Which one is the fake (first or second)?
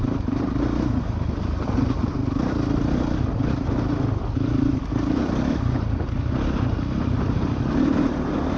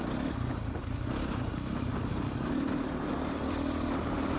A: first